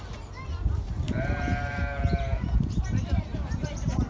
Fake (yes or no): yes